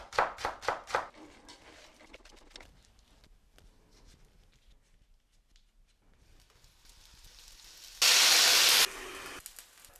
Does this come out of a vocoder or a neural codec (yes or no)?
no